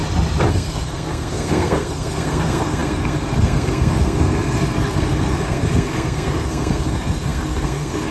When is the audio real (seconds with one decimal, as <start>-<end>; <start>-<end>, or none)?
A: 0.0-0.5